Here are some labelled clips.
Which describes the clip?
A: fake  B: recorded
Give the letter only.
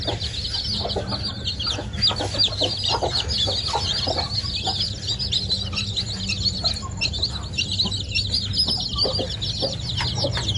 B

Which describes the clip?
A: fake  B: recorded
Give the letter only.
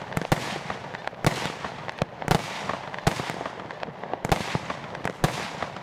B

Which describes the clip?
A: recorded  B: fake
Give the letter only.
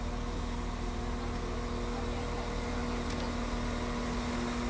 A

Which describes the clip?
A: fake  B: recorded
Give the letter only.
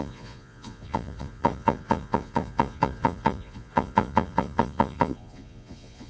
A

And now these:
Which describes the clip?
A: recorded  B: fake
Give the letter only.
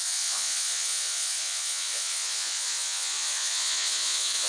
B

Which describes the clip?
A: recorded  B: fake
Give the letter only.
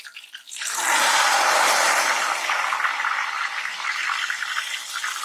A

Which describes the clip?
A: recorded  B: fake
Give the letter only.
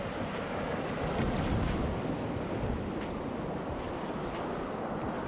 A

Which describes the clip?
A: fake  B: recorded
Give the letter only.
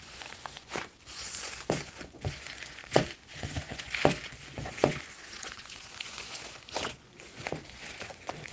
A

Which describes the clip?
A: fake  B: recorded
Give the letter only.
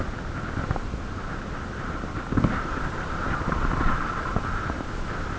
B